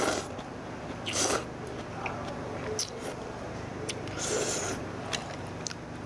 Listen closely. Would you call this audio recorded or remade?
recorded